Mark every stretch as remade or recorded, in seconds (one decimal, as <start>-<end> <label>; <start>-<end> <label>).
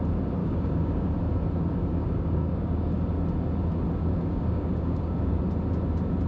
0.0-0.4 recorded; 0.4-1.1 remade; 1.1-1.9 recorded; 1.9-2.9 remade; 2.9-4.0 recorded; 4.0-5.4 remade; 5.4-6.3 recorded